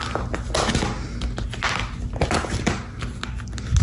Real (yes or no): yes